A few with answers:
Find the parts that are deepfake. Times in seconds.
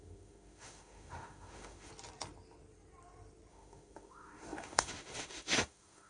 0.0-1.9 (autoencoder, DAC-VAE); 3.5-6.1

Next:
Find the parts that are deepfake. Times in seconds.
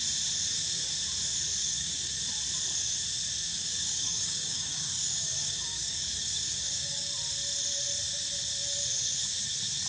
1.6-2.2 (codec, DAC); 3.5-7.1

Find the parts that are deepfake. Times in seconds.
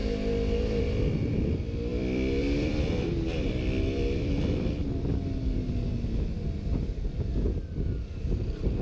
0.8-4.8 (vocoder, BigVGAN v2); 7.3-8.8